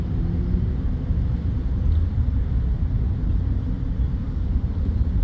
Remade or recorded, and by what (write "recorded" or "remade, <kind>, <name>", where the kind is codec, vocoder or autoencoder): recorded